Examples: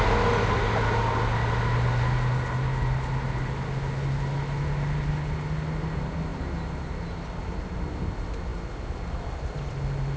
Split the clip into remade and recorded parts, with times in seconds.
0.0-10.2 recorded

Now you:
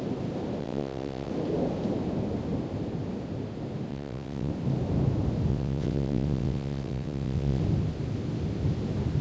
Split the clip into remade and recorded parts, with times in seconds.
0.0-0.6 recorded; 0.6-1.3 remade; 1.3-3.9 recorded; 3.9-4.5 remade; 4.5-5.5 recorded; 5.5-7.6 remade; 7.6-9.2 recorded

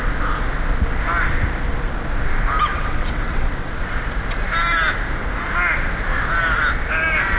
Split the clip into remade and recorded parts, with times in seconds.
0.0-2.7 recorded; 2.7-4.0 remade; 4.0-7.4 recorded

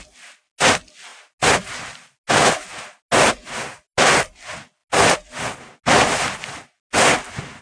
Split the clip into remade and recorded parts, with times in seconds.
0.0-7.6 recorded